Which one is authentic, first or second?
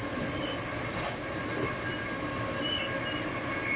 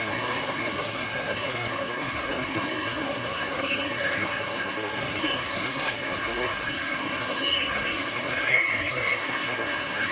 first